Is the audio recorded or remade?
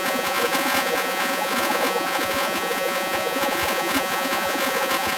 remade